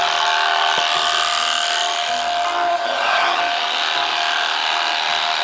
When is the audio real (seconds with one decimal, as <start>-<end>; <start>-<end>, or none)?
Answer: 0.0-2.7; 3.4-5.4

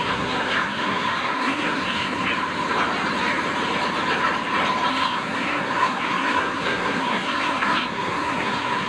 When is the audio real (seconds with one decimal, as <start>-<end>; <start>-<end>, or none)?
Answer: 2.3-4.9